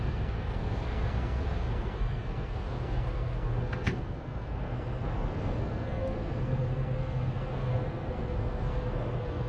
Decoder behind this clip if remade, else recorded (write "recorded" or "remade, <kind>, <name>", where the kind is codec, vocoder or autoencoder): remade, codec, SNAC